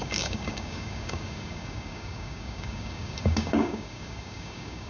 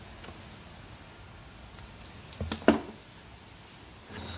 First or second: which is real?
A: second